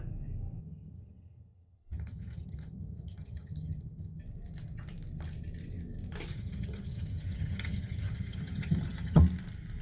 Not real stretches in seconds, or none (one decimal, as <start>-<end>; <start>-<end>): 0.6-4.2; 6.3-9.2